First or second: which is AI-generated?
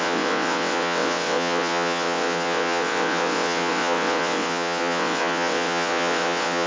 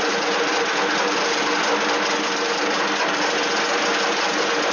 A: first